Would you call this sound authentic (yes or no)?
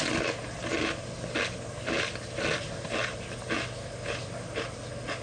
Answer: yes